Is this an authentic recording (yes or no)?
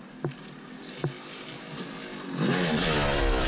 yes